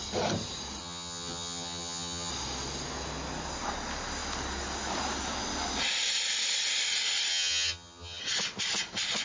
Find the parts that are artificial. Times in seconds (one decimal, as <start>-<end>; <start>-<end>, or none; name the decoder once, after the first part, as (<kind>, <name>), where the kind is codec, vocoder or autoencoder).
0.8-2.3 (vocoder, HiFi-GAN); 7.3-8.2